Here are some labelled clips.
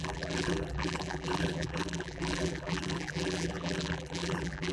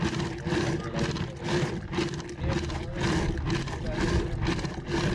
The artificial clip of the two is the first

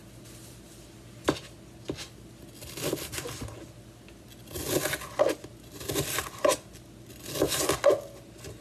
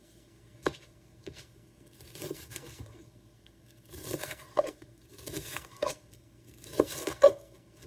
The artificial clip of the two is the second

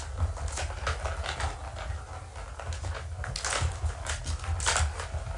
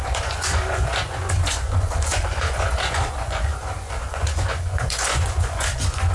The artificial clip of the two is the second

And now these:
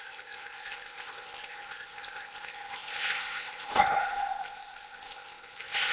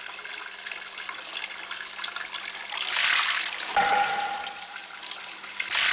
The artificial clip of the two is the first